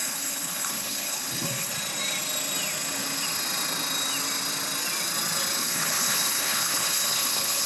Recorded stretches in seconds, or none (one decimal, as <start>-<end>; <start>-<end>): 1.7-5.6